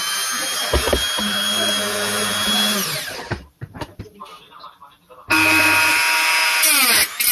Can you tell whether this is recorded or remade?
remade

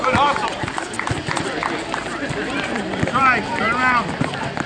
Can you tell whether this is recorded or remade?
recorded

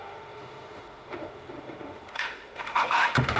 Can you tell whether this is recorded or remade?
remade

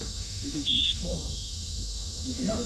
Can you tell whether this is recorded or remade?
remade